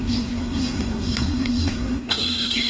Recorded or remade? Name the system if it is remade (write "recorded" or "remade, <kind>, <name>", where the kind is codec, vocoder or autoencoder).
remade, codec, SNAC